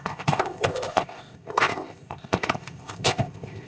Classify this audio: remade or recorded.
remade